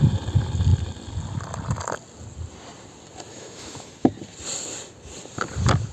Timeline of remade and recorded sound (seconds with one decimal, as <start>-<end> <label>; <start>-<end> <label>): 0.0-3.3 recorded; 3.3-4.1 remade; 4.1-5.9 recorded